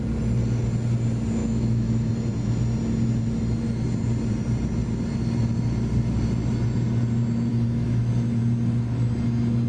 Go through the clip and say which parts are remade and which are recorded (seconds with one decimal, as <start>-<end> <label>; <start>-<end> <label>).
0.0-1.4 recorded; 1.4-2.1 remade; 2.1-7.5 recorded; 7.5-8.4 remade; 8.4-9.7 recorded